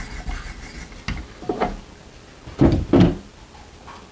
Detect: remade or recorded recorded